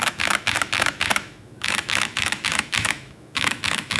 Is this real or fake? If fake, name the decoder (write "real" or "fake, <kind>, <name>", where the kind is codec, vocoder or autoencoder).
fake, autoencoder, DAC-VAE